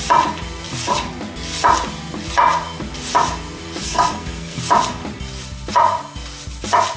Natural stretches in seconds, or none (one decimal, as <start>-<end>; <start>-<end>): 0.0-3.8; 4.6-7.0